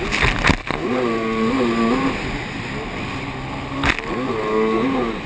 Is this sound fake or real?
real